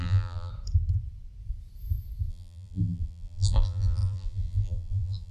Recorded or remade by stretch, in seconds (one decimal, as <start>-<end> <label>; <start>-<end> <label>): 0.0-0.5 remade; 0.5-2.3 recorded; 2.3-5.3 remade